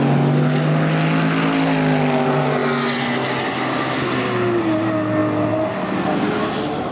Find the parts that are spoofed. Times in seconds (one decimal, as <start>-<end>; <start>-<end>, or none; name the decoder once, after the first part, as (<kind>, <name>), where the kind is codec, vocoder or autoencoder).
none